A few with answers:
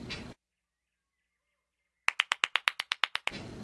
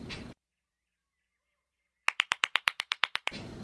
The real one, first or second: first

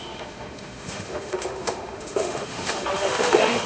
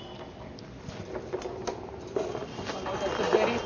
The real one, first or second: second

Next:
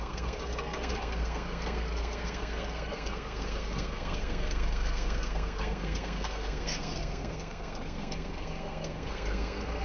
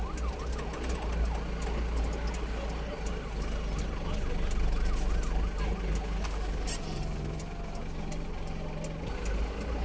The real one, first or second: second